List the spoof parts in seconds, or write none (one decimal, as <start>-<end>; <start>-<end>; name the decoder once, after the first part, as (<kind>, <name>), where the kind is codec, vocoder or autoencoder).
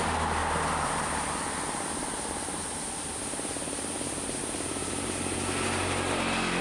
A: 0.4-4.4 (vocoder, BigVGAN v2)